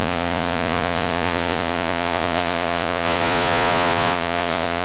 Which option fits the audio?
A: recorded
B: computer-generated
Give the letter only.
B